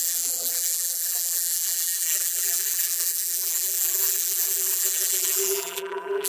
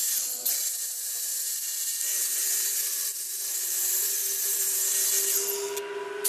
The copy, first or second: first